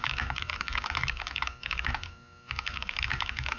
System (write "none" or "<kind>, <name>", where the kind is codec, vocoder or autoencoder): autoencoder, DAC-VAE